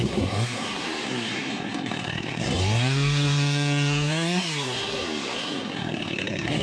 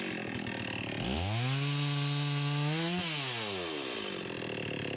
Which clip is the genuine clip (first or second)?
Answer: second